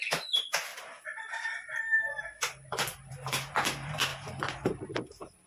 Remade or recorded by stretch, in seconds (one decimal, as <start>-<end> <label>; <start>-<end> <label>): 0.0-0.7 remade; 0.7-3.5 recorded; 3.5-5.5 remade